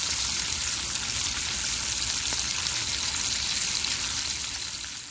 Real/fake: real